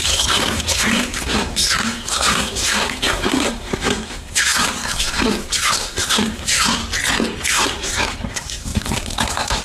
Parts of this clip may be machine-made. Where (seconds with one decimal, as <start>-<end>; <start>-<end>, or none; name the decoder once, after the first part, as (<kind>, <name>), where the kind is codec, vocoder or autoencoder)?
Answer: 0.0-6.8 (codec, SNAC); 7.5-9.6